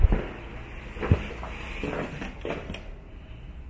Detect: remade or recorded recorded